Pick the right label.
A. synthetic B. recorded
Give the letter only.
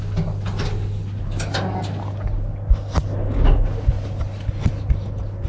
B